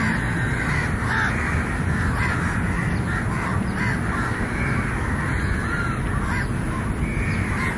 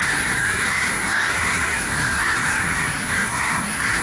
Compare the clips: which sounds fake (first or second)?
second